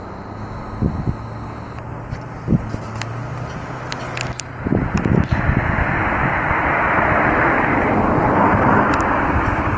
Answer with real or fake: real